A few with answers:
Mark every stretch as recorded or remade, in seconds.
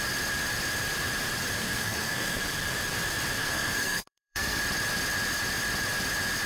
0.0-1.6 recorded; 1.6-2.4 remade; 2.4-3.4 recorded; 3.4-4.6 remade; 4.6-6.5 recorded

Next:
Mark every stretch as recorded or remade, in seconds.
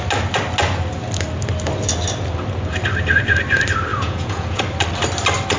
0.0-3.9 recorded; 3.9-4.6 remade; 4.6-5.6 recorded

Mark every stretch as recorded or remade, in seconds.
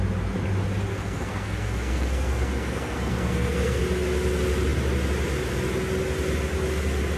0.0-0.9 recorded; 0.9-3.8 remade; 3.8-7.2 recorded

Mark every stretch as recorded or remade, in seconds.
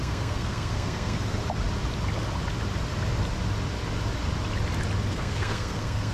0.0-1.4 remade; 1.4-5.1 recorded; 5.1-6.1 remade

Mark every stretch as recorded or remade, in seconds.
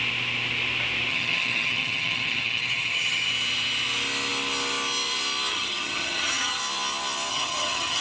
0.0-1.1 recorded; 1.1-3.3 remade; 3.3-5.5 recorded; 5.5-6.6 remade; 6.6-7.3 recorded; 7.3-8.0 remade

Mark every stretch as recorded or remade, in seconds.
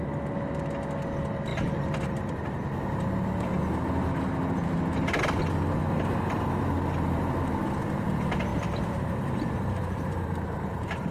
0.0-5.9 recorded; 5.9-7.4 remade; 7.4-8.5 recorded; 8.5-11.1 remade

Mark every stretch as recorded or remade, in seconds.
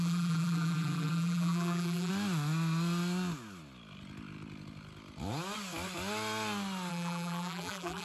0.0-2.1 remade; 2.1-6.9 recorded; 6.9-8.0 remade